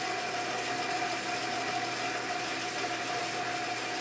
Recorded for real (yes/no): yes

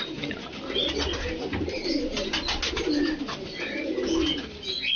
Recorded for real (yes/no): yes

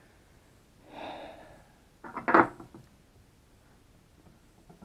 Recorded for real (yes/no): yes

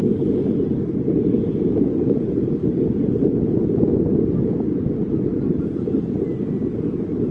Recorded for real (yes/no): yes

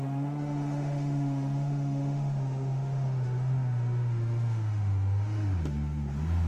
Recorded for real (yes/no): no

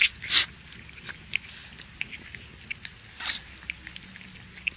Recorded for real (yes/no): yes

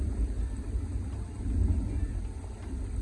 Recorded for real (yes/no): yes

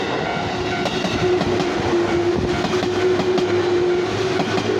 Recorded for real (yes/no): yes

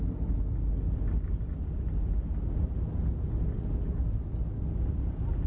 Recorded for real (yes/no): yes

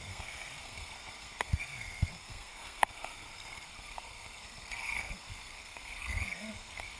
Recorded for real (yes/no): no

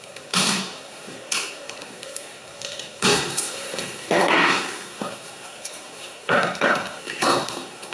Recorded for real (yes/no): no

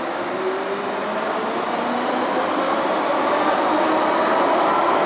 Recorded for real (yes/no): yes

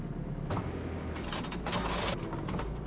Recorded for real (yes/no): yes